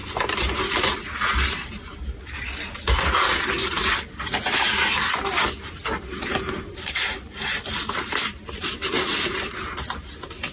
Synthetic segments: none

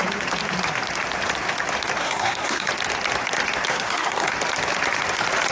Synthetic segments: 2.0-2.7 (codec, SNAC); 3.7-4.3

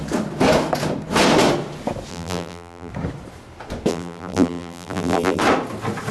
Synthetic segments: 2.1-2.9 (vocoder, BigVGAN v2); 3.9-5.4

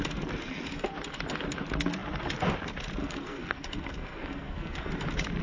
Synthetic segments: 3.0-4.9 (codec, SNAC)

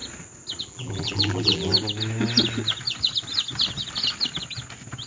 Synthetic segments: 0.6-1.7 (vocoder, BigVGAN v2)

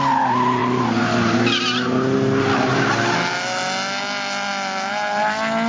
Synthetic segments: none

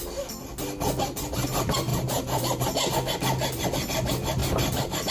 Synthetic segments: 1.9-2.9 (vocoder, BigVGAN v2); 4.4-5.1

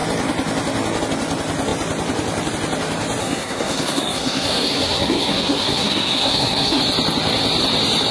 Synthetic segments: 3.2-6.8 (codec, SNAC)